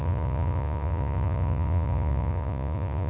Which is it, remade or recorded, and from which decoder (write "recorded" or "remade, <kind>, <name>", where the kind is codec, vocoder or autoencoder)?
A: remade, vocoder, Vocos